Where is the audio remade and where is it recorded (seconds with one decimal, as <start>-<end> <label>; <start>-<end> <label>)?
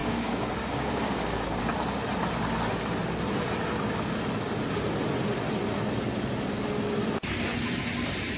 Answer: 0.0-1.6 remade; 1.6-8.4 recorded